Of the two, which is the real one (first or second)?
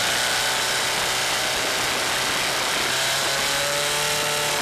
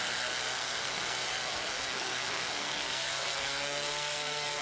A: first